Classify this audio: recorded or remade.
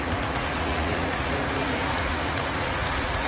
remade